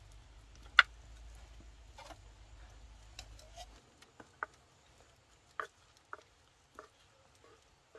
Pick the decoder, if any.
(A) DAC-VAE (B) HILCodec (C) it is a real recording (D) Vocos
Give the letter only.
C